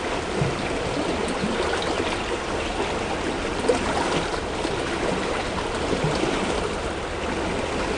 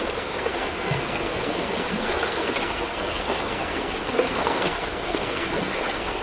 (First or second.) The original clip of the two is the first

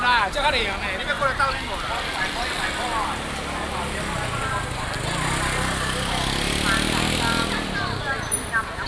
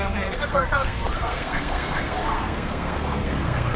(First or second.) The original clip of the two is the first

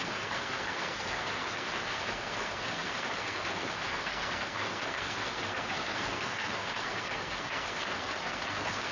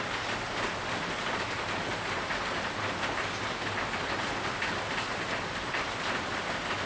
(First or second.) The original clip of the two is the second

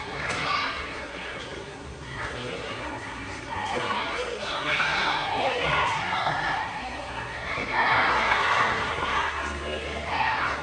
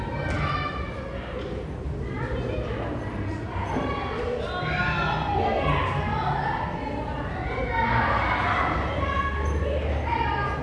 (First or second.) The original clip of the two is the second